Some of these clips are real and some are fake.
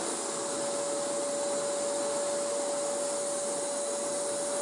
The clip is real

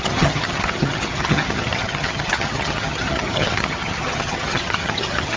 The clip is fake